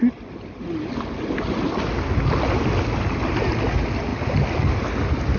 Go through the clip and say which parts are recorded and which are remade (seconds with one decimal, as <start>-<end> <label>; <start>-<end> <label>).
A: 0.0-5.4 recorded